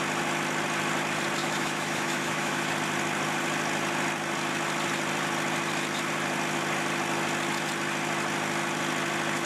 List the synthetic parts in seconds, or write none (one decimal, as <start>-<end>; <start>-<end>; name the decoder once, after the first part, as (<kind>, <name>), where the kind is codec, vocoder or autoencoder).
1.4-2.7 (autoencoder, DAC-VAE)